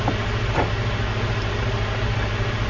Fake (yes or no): no